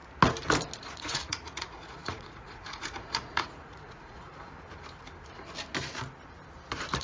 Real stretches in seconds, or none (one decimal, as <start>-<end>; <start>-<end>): 0.0-0.8; 4.3-7.0